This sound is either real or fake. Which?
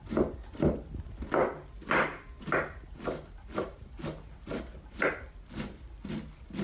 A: real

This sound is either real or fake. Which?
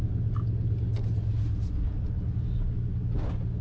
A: real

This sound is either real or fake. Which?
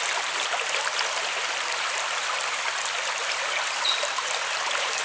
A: real